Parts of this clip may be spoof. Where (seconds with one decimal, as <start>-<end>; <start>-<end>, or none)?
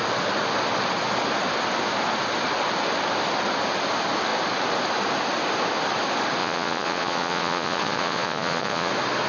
6.4-8.9